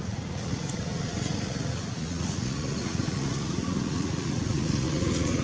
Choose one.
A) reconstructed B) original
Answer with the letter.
A